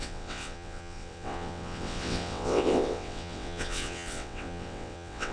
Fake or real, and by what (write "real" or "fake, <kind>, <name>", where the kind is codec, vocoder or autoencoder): fake, vocoder, WaveNeXt